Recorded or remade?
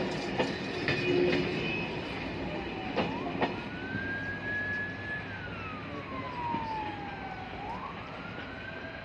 recorded